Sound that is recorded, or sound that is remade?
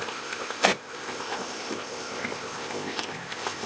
remade